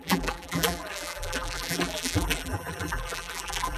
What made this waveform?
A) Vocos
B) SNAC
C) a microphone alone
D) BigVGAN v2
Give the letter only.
D